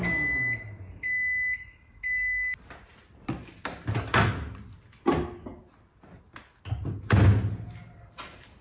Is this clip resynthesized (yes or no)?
no